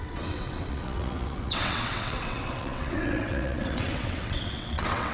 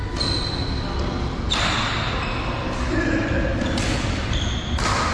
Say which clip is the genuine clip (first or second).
second